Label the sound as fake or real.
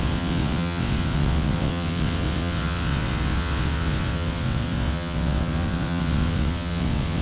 fake